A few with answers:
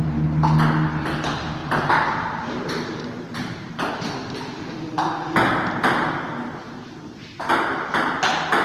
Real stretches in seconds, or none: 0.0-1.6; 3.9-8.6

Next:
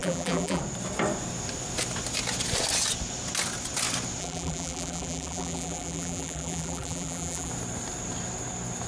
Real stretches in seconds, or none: 0.6-4.2; 7.5-8.9

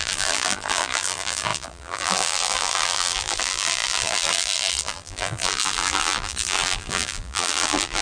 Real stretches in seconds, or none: none

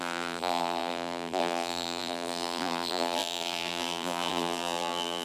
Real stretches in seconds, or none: none

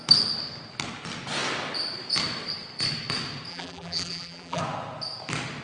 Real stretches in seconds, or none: 0.0-3.5; 4.6-5.6

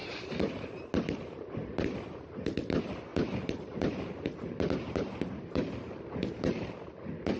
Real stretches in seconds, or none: 0.5-3.1; 6.7-7.4